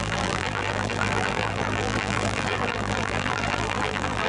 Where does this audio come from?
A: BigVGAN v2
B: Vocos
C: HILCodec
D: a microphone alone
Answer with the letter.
A